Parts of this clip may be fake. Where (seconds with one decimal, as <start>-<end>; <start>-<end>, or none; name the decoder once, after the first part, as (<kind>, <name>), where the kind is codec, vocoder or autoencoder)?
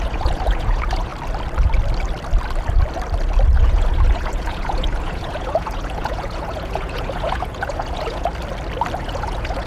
0.0-1.1 (vocoder, Vocos); 3.6-8.3; 9.0-9.7